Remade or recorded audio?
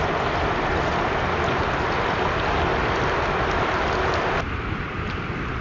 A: recorded